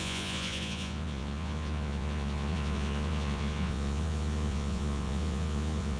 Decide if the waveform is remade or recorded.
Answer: remade